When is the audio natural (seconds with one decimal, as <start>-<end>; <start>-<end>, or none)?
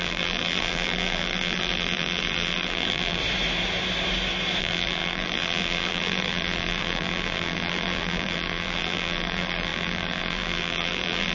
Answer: 3.2-4.6